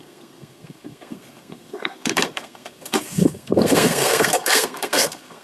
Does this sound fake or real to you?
fake